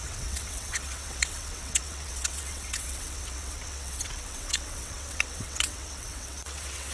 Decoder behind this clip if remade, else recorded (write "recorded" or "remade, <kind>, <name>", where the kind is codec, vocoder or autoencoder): remade, vocoder, WaveNeXt